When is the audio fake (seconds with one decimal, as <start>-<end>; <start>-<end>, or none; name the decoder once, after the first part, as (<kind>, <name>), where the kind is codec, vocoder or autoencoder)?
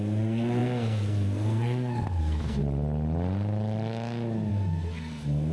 0.0-2.6 (codec, SNAC); 4.5-5.5